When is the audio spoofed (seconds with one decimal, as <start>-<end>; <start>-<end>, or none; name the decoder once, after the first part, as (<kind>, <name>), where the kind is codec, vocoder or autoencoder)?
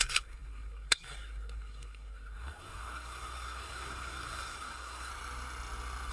0.0-5.1 (codec, SNAC)